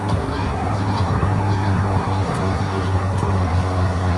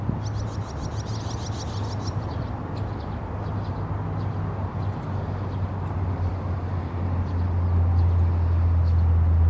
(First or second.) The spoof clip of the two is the first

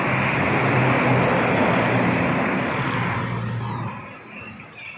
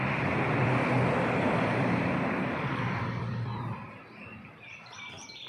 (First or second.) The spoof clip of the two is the second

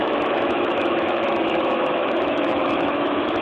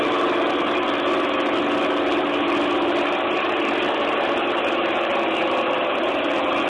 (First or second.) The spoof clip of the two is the first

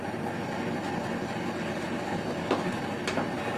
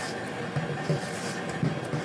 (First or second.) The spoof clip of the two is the second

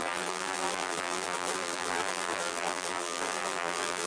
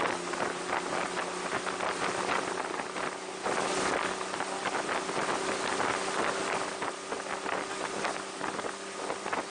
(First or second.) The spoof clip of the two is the first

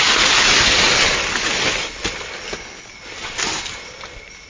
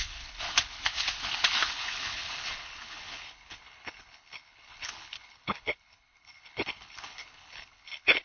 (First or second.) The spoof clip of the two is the second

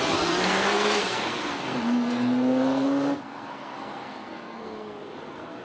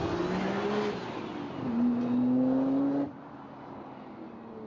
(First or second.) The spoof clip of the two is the first